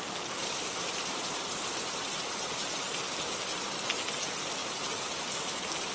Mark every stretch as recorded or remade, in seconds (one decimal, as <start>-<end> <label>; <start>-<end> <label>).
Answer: 0.0-0.4 recorded; 0.4-2.8 remade; 2.8-4.6 recorded; 4.6-5.1 remade; 5.1-5.9 recorded